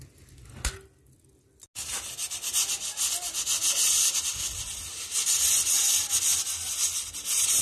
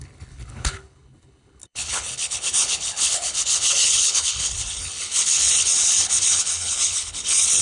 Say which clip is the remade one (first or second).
second